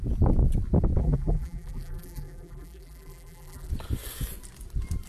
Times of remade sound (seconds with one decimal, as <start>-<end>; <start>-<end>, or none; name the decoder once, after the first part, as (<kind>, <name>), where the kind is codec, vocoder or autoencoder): 1.0-3.7 (vocoder, BigVGAN v2)